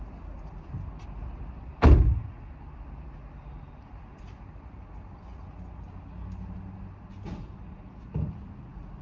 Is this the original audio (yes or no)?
yes